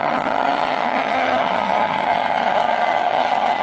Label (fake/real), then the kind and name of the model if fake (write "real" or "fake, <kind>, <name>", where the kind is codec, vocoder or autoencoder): fake, vocoder, HiFi-GAN